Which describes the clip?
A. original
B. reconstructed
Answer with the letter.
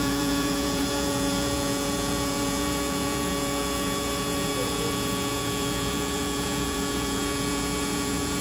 B